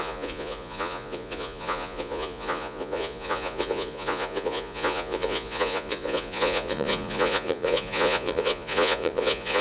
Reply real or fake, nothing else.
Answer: fake